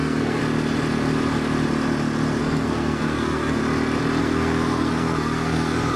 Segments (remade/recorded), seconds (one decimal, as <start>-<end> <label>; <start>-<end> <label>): 0.0-0.4 remade; 0.4-2.4 recorded; 2.4-3.6 remade; 3.6-4.2 recorded; 4.2-6.0 remade